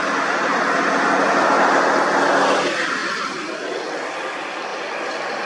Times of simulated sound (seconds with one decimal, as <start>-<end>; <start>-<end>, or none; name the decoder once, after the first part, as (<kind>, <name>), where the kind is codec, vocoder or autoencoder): none